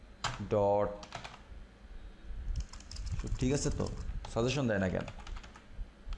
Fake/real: real